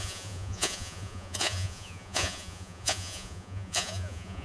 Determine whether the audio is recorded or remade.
remade